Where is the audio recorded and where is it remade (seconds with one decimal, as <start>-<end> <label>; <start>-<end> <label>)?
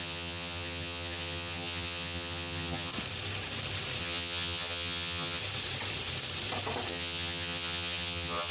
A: 0.0-2.9 remade; 2.9-4.0 recorded; 4.0-5.4 remade; 5.4-6.9 recorded; 6.9-8.5 remade